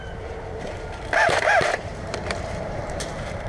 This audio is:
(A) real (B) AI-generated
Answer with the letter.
B